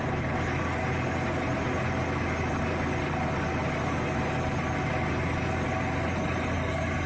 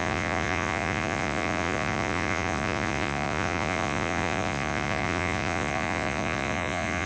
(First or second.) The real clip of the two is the first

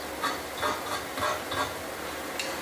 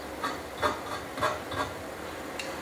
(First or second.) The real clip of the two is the first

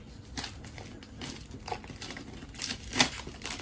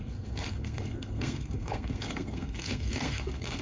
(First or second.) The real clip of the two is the first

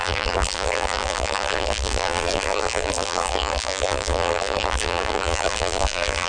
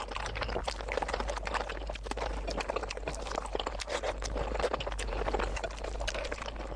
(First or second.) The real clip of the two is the second